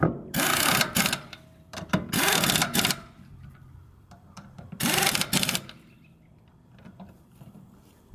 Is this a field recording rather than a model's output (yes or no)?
no